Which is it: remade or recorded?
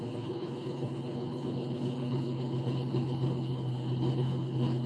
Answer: remade